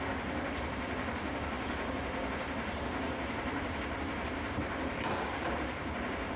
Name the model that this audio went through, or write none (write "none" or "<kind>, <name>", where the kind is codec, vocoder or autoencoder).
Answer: vocoder, BigVGAN v2